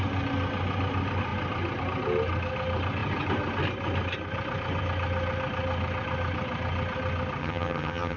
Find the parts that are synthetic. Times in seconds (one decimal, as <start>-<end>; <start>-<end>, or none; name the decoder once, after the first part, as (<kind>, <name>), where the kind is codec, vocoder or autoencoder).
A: 7.4-8.2 (vocoder, HiFi-GAN)